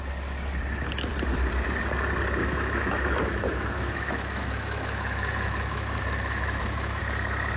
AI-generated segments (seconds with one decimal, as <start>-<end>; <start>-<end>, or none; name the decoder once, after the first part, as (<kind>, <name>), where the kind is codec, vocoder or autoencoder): 2.4-7.0 (autoencoder, DAC-VAE)